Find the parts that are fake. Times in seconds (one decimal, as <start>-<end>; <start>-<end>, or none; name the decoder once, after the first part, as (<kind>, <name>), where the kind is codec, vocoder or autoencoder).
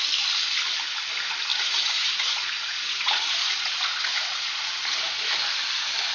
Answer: 1.5-5.2 (vocoder, Vocos)